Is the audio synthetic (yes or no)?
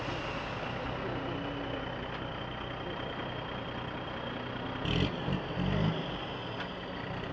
no